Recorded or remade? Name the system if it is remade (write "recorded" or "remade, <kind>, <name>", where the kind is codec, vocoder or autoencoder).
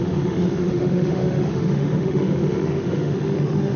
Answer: remade, autoencoder, DAC-VAE